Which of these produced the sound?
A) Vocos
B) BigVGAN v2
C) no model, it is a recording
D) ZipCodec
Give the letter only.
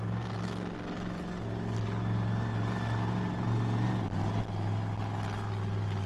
C